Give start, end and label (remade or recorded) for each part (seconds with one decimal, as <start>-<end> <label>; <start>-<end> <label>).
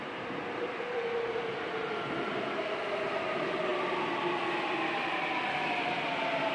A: 0.0-6.5 recorded